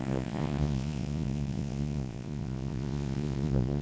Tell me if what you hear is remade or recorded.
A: remade